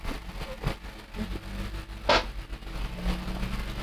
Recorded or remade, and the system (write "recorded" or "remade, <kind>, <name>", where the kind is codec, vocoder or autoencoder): recorded